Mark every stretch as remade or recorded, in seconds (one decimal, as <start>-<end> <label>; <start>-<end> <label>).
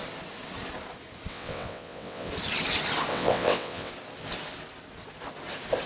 0.0-1.3 recorded; 1.3-2.3 remade; 2.3-3.1 recorded; 3.1-3.9 remade; 3.9-5.9 recorded